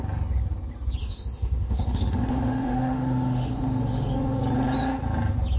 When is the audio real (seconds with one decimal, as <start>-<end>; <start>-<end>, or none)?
0.0-1.0; 4.4-5.6